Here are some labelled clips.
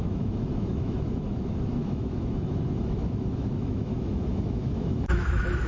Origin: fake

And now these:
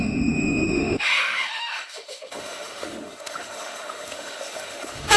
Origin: fake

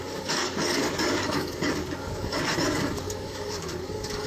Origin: fake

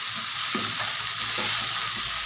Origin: real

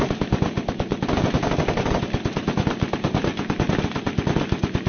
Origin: real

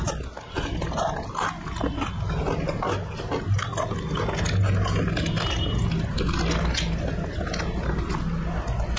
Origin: real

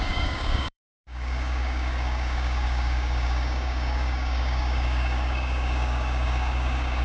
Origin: fake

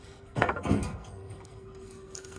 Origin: fake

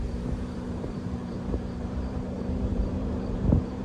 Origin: fake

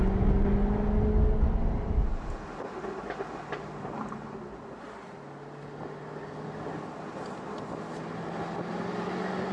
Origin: real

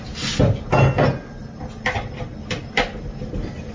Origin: real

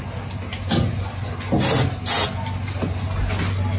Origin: real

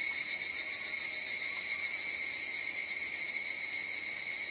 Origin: real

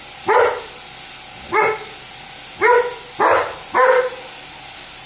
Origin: real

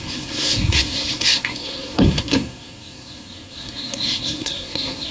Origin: fake